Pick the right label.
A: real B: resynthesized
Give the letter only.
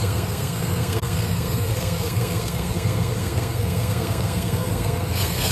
B